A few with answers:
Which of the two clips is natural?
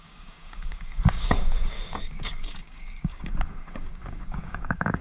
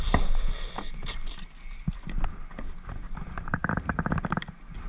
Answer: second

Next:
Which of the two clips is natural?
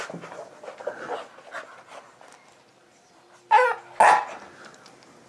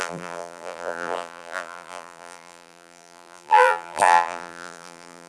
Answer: first